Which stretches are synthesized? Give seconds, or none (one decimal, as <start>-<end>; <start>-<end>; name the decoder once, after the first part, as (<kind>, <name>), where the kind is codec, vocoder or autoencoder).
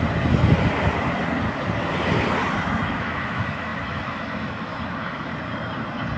3.0-5.3 (autoencoder, DAC-VAE)